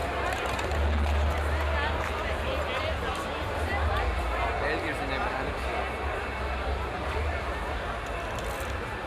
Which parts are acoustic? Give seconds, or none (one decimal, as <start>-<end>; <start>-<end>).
0.0-9.1